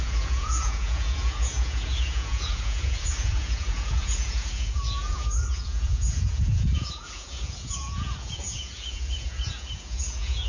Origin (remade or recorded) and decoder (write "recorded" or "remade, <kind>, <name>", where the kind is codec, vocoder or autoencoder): remade, vocoder, Vocos